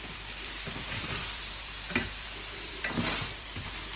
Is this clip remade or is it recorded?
remade